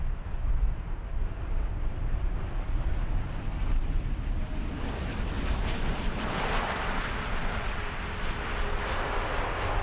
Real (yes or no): yes